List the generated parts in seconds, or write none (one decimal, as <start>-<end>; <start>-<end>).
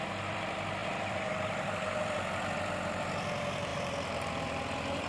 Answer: 0.0-5.1